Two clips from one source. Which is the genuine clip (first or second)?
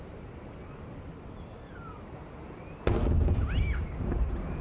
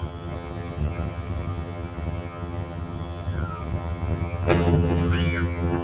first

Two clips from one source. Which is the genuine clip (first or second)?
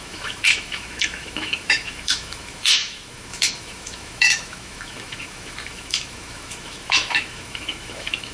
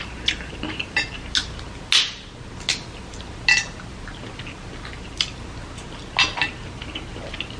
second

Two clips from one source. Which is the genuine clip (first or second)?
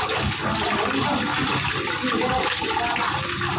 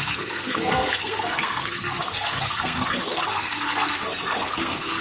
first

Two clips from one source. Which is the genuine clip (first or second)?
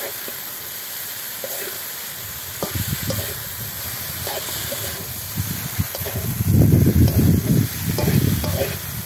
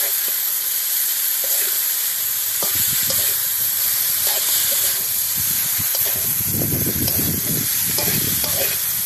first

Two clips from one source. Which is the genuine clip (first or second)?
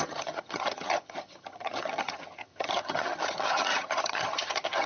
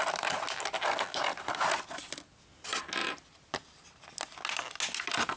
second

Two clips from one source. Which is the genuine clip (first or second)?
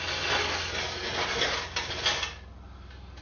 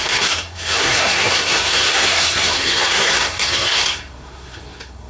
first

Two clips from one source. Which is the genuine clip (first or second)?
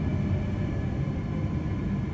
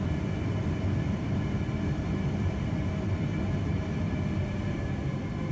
first